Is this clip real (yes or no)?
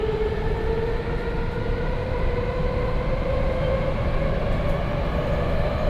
yes